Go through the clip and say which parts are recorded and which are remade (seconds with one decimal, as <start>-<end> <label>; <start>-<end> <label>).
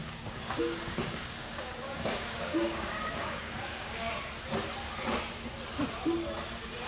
0.0-4.1 remade; 4.1-6.9 recorded